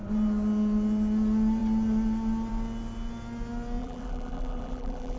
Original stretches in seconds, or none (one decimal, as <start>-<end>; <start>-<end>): 0.0-3.8